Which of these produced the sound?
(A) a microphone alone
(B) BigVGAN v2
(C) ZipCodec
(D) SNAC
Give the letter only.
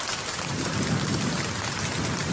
A